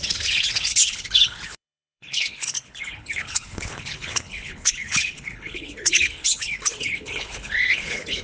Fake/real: fake